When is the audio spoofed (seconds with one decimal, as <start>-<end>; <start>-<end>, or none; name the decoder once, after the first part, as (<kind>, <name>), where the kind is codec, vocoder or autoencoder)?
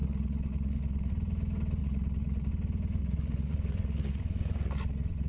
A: 0.0-1.1 (vocoder, WaveNeXt); 1.8-2.5; 3.0-5.3